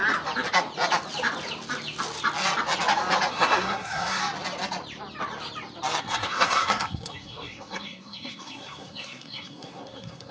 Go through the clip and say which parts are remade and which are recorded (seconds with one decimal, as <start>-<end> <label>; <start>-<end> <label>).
0.0-3.3 recorded; 3.3-4.2 remade; 4.2-6.0 recorded; 6.0-10.3 remade